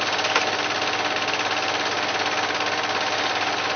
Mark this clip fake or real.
real